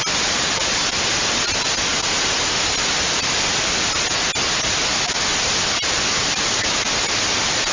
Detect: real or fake real